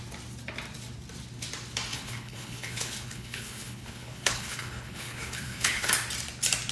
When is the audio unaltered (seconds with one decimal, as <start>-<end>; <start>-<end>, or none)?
0.0-1.9; 5.9-6.7